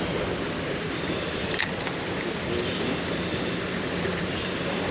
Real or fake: real